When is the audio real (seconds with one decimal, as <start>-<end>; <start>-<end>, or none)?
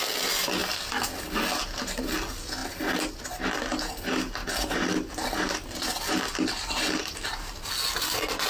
0.0-0.6; 1.2-2.6; 3.2-4.4; 7.0-8.5